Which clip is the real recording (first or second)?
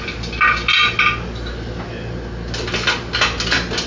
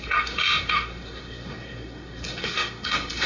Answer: first